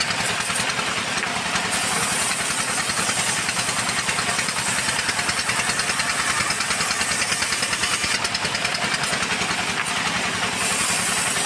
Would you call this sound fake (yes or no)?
no